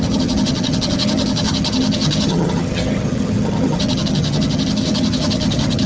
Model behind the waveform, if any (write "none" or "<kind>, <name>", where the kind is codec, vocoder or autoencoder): vocoder, HiFi-GAN